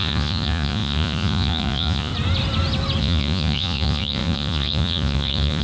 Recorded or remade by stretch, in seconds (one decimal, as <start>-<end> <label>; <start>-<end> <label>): 0.0-2.1 remade; 2.1-3.0 recorded; 3.0-5.6 remade